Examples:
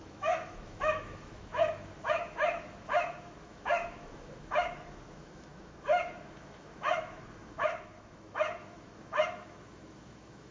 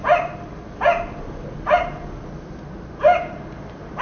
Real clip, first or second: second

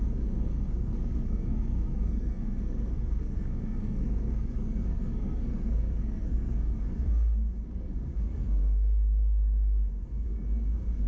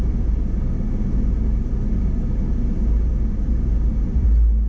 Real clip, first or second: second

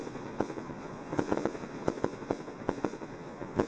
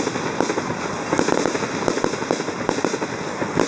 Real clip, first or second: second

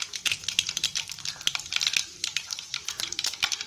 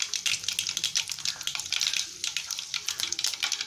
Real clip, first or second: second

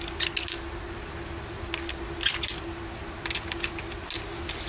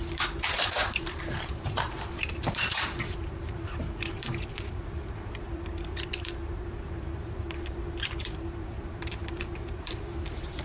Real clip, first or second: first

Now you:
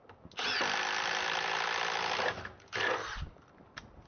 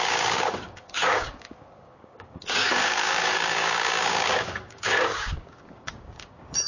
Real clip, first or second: first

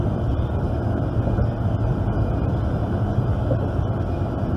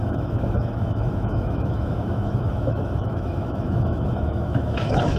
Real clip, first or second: first